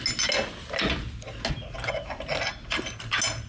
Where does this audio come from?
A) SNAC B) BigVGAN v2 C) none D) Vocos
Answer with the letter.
C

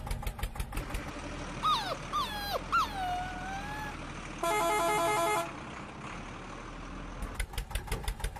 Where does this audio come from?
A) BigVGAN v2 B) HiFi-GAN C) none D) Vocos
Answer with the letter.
C